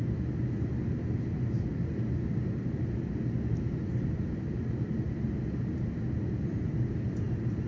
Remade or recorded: recorded